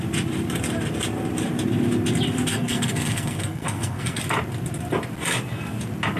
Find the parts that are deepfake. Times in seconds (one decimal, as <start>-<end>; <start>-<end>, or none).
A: 2.5-4.2